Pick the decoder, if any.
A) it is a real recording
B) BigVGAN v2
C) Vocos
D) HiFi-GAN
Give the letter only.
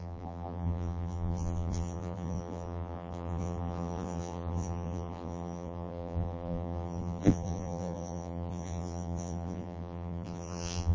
B